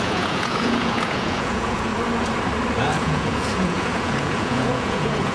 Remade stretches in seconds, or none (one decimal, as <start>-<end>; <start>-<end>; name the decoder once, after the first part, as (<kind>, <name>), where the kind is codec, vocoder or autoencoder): 0.0-1.9 (vocoder, Vocos); 3.0-5.3